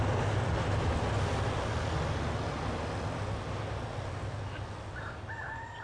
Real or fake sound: real